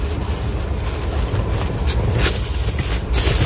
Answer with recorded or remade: recorded